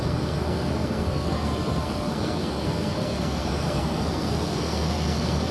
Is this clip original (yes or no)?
no